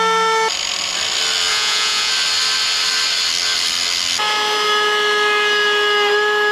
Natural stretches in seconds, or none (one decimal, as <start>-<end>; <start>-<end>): 0.0-1.5; 2.1-6.5